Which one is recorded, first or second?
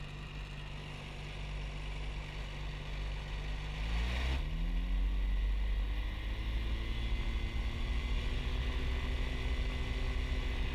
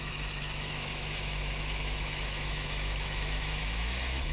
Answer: first